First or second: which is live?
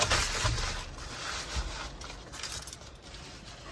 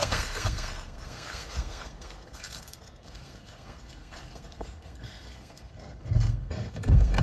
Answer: first